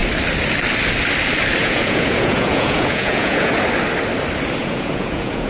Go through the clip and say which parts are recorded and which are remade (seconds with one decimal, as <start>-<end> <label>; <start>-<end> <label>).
0.0-1.6 recorded; 1.6-3.5 remade; 3.5-4.6 recorded; 4.6-5.5 remade